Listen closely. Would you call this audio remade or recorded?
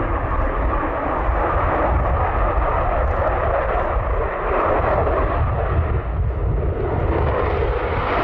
recorded